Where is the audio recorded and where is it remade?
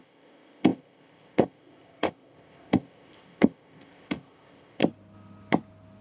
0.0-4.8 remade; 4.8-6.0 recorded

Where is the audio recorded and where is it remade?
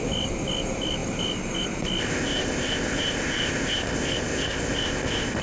0.0-2.0 recorded; 2.0-5.4 remade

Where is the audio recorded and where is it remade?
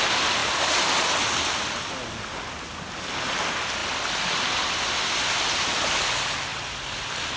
0.0-7.4 recorded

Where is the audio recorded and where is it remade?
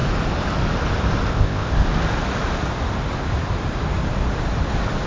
0.0-1.3 recorded; 1.3-1.8 remade; 1.8-5.1 recorded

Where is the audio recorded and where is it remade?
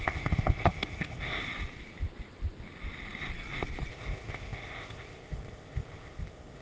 0.0-1.4 remade; 1.4-3.9 recorded; 3.9-6.6 remade